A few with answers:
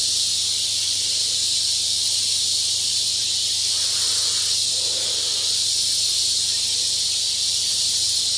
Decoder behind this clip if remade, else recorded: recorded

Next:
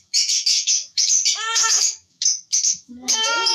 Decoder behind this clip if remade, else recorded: remade, autoencoder, DAC-VAE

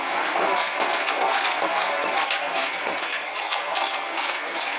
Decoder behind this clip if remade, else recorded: remade, codec, SNAC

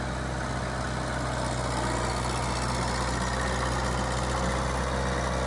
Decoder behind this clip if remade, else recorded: recorded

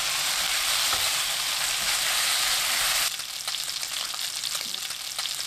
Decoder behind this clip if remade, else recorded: recorded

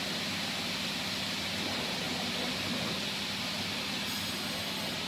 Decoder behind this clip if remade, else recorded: recorded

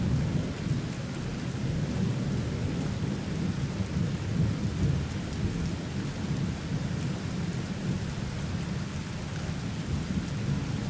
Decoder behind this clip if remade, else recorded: recorded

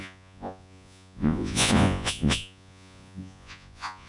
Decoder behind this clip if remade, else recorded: remade, vocoder, Vocos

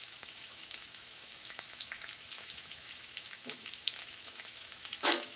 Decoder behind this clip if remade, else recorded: remade, autoencoder, DAC-VAE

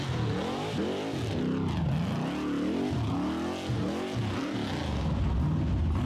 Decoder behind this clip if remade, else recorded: recorded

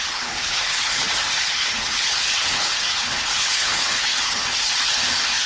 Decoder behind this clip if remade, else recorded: remade, codec, HILCodec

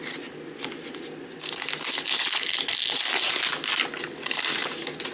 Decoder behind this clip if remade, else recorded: recorded